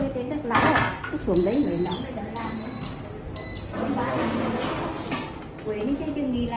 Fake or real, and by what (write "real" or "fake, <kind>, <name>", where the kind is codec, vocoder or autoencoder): real